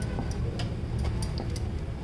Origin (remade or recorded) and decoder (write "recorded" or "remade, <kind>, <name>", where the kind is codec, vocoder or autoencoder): recorded